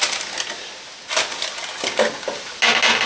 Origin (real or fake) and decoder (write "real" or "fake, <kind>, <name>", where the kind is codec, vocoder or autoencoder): real